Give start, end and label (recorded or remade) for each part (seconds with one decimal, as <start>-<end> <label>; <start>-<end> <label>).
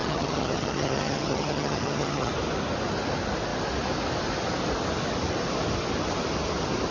0.0-2.3 remade; 2.3-6.9 recorded